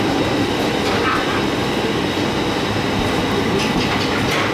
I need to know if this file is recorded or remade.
recorded